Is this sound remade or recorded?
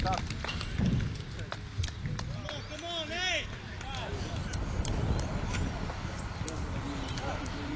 recorded